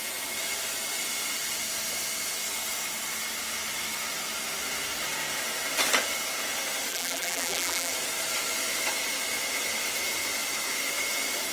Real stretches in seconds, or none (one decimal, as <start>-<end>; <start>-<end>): 0.0-6.9; 7.9-11.5